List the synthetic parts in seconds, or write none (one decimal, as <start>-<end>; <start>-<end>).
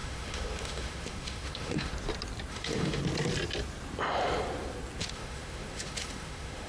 0.0-1.9; 2.5-3.0; 5.0-6.7